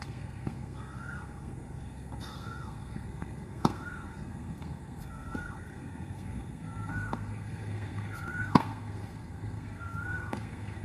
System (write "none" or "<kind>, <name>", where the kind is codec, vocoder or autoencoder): codec, SNAC